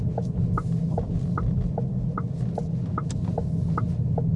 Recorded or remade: recorded